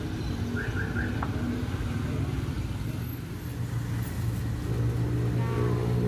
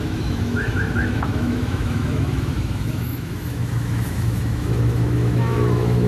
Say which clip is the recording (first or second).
first